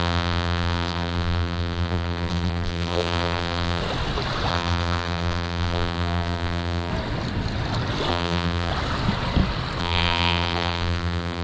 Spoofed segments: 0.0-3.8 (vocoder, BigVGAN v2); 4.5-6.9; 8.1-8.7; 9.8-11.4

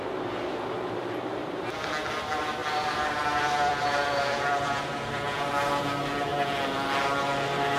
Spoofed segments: 2.6-5.5 (vocoder, BigVGAN v2)

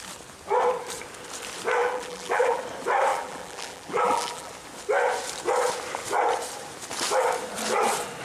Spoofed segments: 1.8-2.6 (vocoder, BigVGAN v2); 3.1-4.5